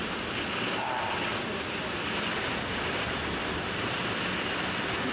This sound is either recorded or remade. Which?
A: recorded